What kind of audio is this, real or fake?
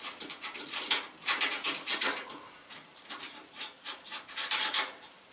fake